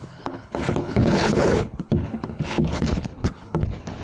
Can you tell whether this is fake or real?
fake